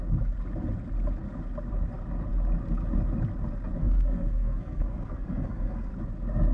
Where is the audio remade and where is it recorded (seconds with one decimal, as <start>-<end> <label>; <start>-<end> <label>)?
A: 0.0-3.8 recorded; 3.8-5.9 remade; 5.9-6.5 recorded